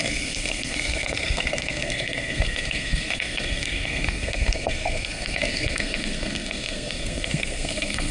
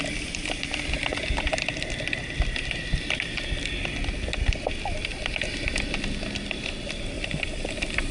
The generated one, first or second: first